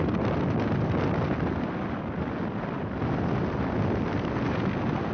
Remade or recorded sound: recorded